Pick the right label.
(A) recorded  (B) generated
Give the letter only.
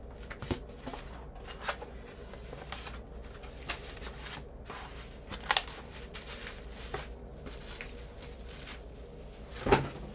A